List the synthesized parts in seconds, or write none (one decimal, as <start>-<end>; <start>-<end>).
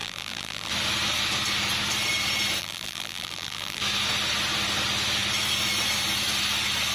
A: 0.0-0.7; 2.6-3.8